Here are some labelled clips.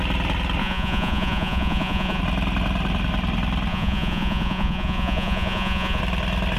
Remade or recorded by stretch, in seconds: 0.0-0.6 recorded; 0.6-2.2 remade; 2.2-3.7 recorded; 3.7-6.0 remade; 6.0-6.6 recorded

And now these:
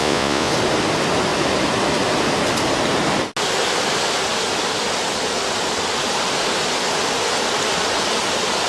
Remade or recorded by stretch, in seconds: 0.0-0.5 remade; 0.5-8.7 recorded

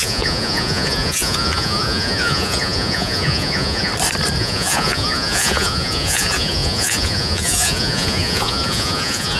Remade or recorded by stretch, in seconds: 0.0-3.9 remade; 3.9-4.4 recorded; 4.4-9.4 remade

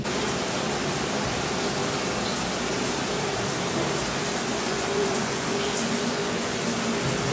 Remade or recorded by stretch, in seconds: 0.0-4.5 recorded; 4.5-6.6 remade; 6.6-7.3 recorded

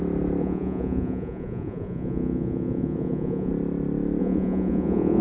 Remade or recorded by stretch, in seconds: 0.0-0.4 recorded; 0.4-3.5 remade; 3.5-4.2 recorded; 4.2-5.2 remade

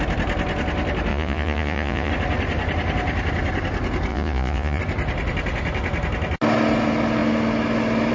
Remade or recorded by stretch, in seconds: 0.0-1.1 recorded; 1.1-2.1 remade; 2.1-4.1 recorded; 4.1-4.8 remade; 4.8-8.1 recorded

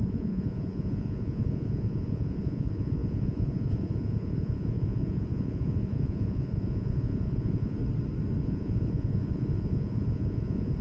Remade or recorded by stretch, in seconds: 0.0-7.8 remade; 7.8-8.4 recorded; 8.4-10.8 remade

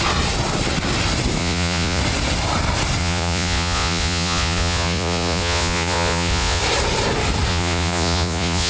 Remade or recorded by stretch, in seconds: 0.0-1.4 recorded; 1.4-2.0 remade; 2.0-3.0 recorded; 3.0-6.6 remade; 6.6-7.5 recorded; 7.5-8.7 remade